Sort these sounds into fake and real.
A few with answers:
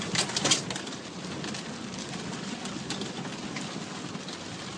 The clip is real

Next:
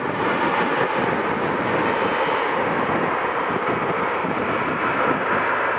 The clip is real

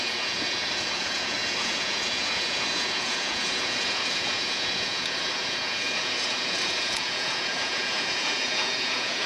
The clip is fake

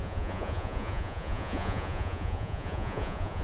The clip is fake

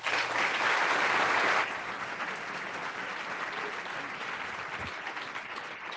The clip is real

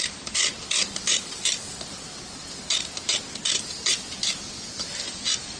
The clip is real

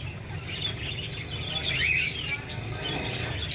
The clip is real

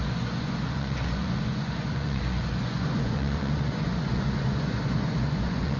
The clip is fake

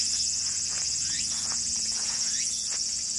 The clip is fake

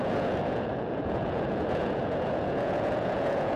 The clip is fake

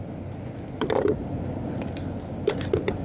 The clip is real